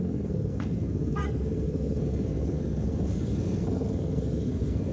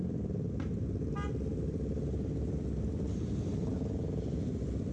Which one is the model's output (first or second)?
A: first